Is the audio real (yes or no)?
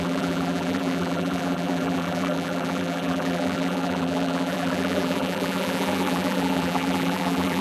no